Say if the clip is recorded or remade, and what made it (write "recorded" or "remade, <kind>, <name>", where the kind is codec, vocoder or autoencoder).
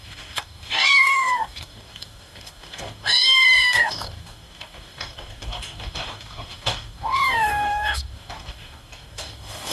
remade, codec, DAC